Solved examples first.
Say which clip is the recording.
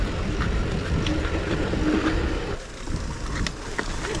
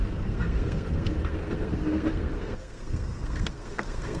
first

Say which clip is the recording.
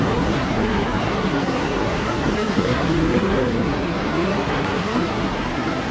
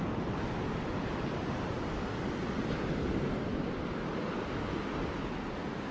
second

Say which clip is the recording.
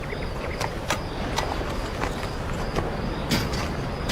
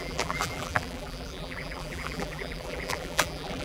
first